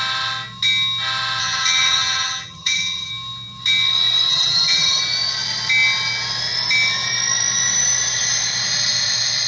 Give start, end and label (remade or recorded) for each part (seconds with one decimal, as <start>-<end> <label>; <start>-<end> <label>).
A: 0.0-1.4 recorded; 1.4-3.1 remade; 3.1-4.3 recorded; 4.3-5.0 remade; 5.0-9.5 recorded